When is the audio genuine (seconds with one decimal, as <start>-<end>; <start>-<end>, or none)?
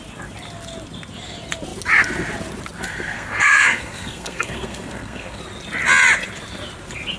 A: 0.0-2.9; 5.4-7.2